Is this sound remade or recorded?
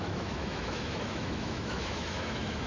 remade